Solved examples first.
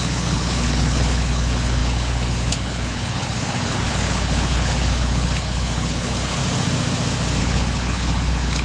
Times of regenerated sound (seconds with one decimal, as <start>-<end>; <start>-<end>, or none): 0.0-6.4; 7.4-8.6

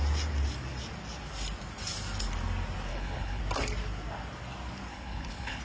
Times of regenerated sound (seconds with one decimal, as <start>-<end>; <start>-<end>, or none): 2.9-3.4; 4.9-5.6

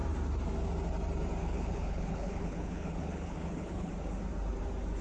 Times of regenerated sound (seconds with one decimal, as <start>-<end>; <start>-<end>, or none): 1.4-3.9

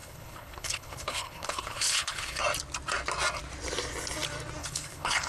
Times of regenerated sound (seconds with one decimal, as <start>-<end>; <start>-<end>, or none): 0.0-2.4; 4.6-5.3

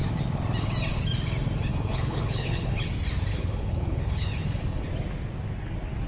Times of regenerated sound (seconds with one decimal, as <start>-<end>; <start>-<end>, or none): 1.7-2.9; 3.3-4.9

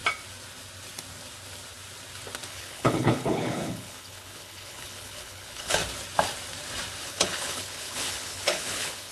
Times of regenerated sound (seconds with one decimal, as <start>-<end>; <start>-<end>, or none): 2.5-5.8; 7.0-9.1

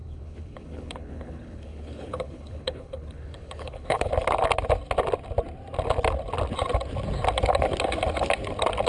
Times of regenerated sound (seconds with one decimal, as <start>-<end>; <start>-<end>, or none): 0.0-4.1